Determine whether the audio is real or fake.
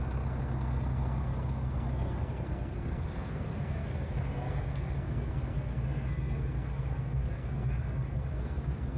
fake